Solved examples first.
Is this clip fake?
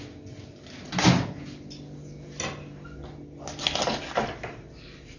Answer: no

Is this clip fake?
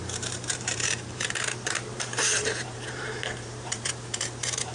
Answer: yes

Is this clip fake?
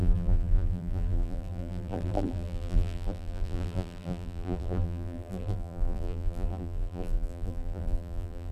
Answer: yes